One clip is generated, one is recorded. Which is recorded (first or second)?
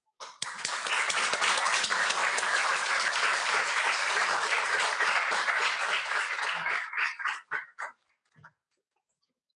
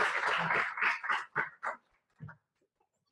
second